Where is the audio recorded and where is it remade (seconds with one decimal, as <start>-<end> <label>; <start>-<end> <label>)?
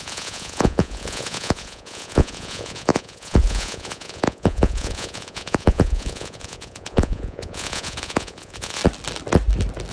0.0-8.8 remade; 8.8-9.9 recorded